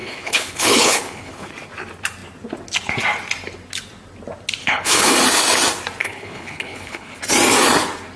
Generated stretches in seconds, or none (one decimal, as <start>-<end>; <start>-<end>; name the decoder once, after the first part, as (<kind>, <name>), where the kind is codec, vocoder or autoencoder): 0.0-1.5 (codec, HILCodec); 4.6-5.1; 6.0-7.2